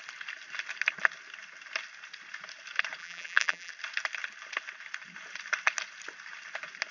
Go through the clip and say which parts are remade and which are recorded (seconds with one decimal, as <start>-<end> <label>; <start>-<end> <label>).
0.0-3.0 recorded; 3.0-3.7 remade; 3.7-6.9 recorded

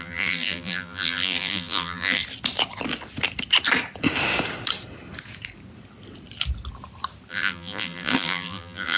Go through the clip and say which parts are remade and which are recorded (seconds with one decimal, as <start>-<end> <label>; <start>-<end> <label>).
0.0-2.2 remade; 2.2-7.3 recorded; 7.3-9.0 remade

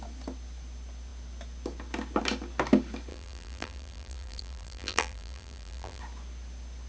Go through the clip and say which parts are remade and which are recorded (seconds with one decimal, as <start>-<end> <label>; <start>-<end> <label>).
0.0-3.1 recorded; 3.1-6.0 remade; 6.0-6.9 recorded

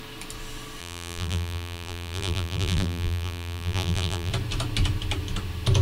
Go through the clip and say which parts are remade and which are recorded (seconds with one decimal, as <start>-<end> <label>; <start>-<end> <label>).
0.0-0.8 recorded; 0.8-4.3 remade; 4.3-5.8 recorded

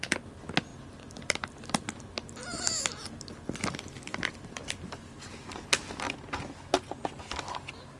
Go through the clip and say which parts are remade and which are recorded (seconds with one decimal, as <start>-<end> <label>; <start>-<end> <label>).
0.0-0.7 recorded; 0.7-2.0 remade; 2.0-4.1 recorded; 4.1-4.7 remade; 4.7-8.0 recorded

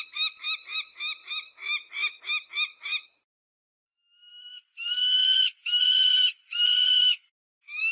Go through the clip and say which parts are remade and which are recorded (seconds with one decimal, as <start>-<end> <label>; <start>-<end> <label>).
0.0-5.2 recorded; 5.2-6.9 remade; 6.9-7.9 recorded